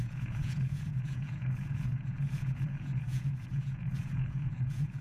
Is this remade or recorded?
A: remade